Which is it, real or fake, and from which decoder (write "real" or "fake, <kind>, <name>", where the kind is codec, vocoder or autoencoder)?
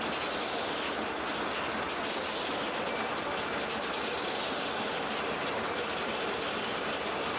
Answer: real